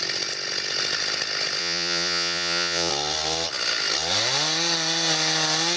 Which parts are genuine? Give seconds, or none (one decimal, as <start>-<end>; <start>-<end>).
0.0-1.6; 2.9-5.8

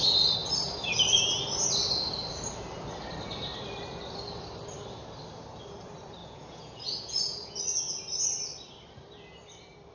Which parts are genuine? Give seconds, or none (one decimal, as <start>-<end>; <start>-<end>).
0.0-6.2; 7.6-9.9

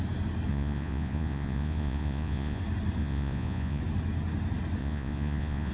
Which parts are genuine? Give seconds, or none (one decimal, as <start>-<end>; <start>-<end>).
0.0-0.5; 2.6-3.0; 3.8-4.8